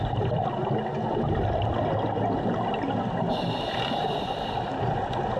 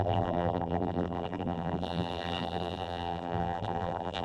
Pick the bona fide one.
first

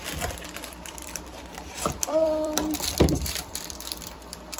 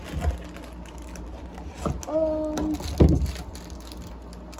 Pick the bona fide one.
second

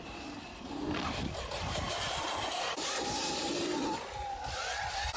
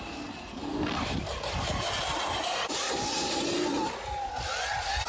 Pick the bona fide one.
second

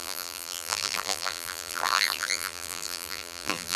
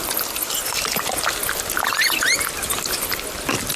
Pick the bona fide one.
second